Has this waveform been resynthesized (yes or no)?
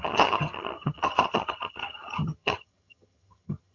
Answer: yes